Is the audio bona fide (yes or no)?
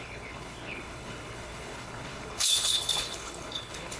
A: no